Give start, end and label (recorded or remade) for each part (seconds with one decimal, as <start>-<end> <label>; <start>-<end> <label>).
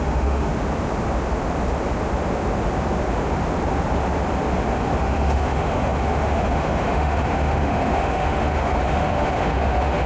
0.0-0.5 remade; 0.5-5.0 recorded; 5.0-10.1 remade